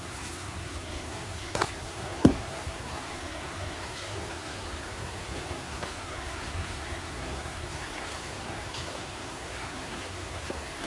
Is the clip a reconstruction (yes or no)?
yes